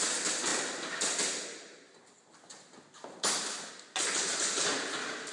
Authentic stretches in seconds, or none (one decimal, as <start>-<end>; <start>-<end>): 0.0-5.3